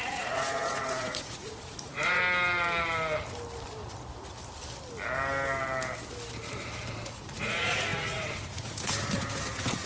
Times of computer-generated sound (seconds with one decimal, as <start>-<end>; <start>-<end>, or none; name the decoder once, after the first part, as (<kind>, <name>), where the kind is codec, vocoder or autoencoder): 0.0-2.2 (vocoder, Vocos); 7.1-9.9